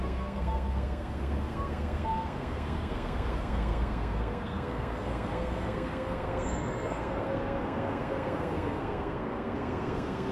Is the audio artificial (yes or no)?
yes